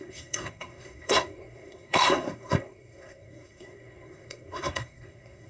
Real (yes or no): no